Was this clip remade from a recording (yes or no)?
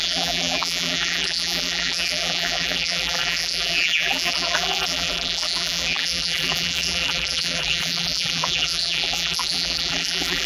yes